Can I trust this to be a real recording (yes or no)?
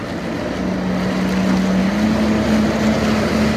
yes